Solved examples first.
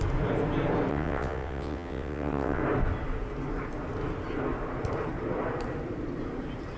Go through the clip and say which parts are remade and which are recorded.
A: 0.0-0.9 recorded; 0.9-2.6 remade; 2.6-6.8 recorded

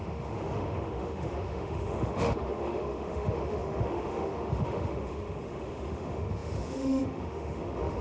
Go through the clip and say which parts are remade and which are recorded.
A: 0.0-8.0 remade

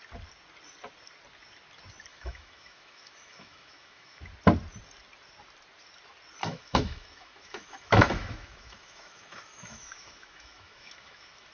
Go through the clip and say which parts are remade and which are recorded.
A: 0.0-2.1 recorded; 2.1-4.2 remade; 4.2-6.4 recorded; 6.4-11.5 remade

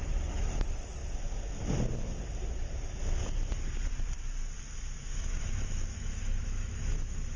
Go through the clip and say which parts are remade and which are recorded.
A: 0.0-1.0 remade; 1.0-5.1 recorded; 5.1-7.4 remade

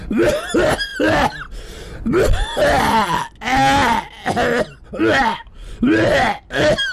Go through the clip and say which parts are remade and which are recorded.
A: 0.0-6.9 recorded